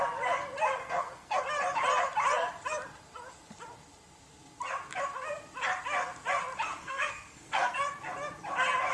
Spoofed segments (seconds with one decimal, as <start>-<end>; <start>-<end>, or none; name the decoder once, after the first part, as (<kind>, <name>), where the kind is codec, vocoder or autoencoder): 0.8-1.4 (codec, SNAC); 6.8-7.8